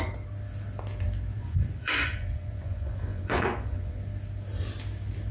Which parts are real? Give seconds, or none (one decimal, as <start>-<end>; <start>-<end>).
0.0-1.4; 4.0-5.3